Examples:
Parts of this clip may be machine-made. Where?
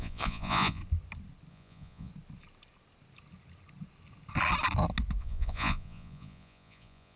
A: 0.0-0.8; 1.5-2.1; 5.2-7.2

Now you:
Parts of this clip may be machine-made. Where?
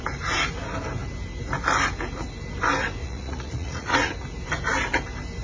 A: 3.0-4.1